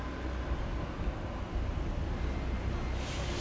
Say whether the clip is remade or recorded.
recorded